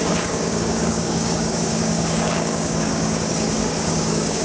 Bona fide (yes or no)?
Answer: no